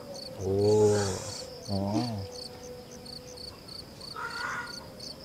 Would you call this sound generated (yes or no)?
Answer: no